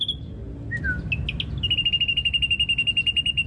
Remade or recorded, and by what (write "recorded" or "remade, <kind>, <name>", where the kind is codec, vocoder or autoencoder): recorded